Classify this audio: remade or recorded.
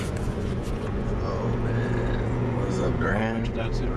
remade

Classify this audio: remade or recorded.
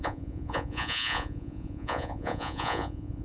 remade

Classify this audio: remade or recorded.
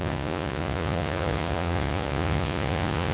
remade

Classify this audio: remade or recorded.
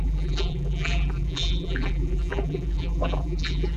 remade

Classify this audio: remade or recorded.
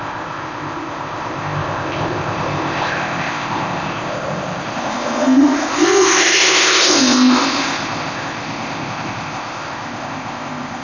remade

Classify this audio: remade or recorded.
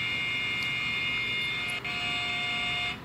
recorded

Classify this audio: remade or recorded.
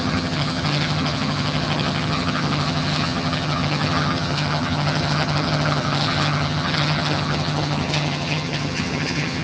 remade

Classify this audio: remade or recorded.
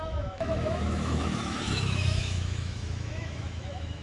remade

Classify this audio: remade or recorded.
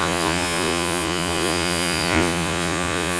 remade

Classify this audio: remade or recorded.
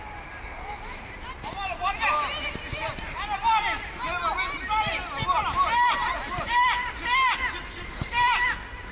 recorded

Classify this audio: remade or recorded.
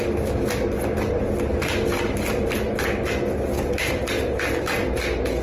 recorded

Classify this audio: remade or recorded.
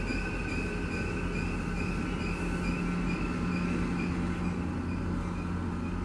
recorded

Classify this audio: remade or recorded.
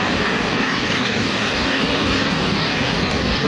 remade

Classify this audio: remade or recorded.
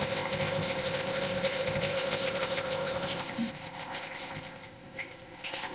remade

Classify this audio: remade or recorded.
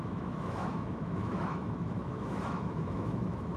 remade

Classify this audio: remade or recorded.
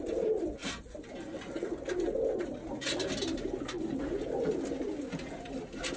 recorded